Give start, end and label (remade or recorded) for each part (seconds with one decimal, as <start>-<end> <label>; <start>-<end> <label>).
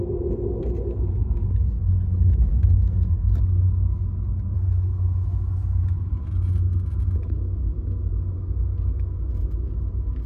0.0-2.5 recorded; 2.5-3.3 remade; 3.3-10.3 recorded